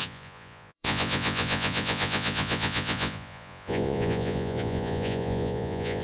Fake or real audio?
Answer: fake